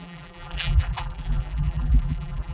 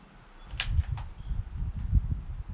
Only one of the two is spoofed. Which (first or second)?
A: first